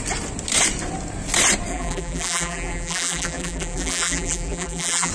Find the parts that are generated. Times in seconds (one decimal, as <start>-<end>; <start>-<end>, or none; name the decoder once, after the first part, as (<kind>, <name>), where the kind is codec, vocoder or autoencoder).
1.7-5.1 (vocoder, BigVGAN v2)